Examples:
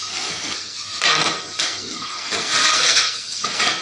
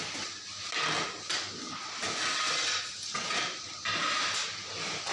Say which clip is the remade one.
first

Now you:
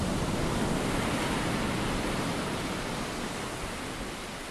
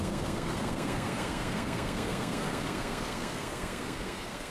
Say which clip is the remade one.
second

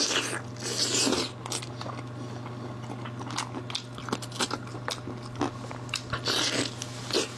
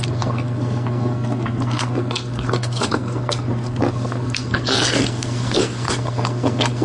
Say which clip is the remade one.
second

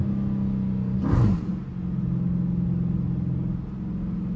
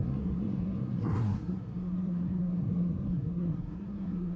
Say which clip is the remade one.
second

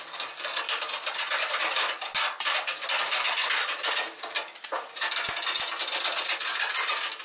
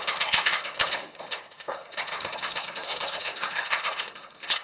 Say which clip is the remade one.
second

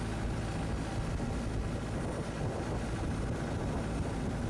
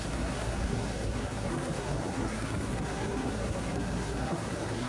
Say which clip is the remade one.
second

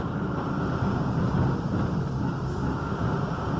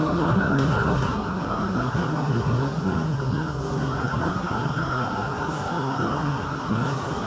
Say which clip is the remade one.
second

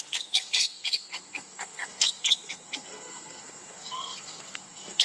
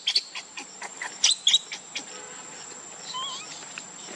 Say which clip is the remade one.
first